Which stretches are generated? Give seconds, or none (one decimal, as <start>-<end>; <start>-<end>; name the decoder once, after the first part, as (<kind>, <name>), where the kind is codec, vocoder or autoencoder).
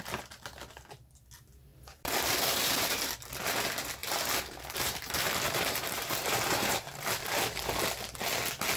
1.7-3.1 (vocoder, BigVGAN v2); 4.0-7.1